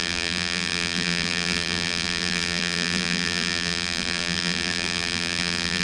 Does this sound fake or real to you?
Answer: fake